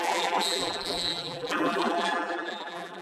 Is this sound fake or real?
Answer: fake